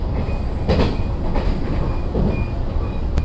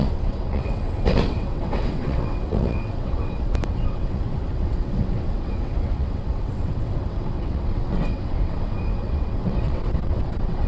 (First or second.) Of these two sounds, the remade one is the second